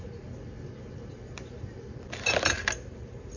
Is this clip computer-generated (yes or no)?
no